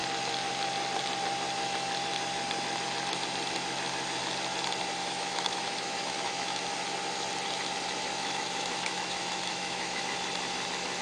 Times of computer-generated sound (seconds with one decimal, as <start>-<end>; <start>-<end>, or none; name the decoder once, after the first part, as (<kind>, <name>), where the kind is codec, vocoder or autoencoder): 5.0-6.6 (autoencoder, DAC-VAE); 8.1-10.0